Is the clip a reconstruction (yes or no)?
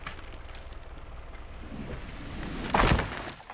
no